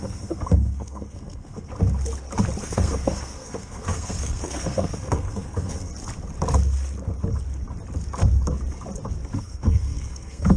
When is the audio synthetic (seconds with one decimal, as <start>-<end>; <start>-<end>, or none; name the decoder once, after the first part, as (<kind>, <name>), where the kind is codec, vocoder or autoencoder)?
0.0-1.7 (codec, SNAC); 2.6-5.9; 9.4-10.6